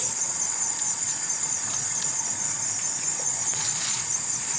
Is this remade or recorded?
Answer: remade